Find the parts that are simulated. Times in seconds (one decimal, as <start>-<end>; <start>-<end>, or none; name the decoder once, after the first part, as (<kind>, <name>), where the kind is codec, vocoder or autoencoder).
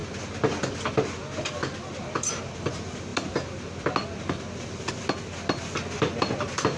none